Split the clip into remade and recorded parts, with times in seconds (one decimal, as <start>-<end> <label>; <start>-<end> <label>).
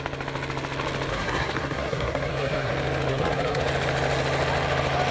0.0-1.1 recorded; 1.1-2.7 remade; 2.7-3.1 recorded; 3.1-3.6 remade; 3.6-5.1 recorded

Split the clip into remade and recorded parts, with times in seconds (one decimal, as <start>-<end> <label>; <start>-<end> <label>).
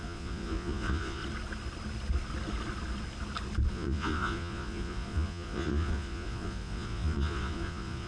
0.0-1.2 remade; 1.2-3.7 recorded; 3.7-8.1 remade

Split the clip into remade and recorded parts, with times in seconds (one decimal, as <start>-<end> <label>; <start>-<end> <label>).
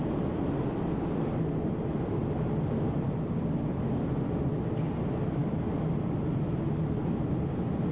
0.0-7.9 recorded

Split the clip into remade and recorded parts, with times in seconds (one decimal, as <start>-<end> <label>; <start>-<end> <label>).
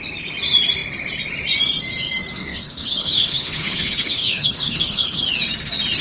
0.0-2.4 recorded; 2.4-5.2 remade; 5.2-6.0 recorded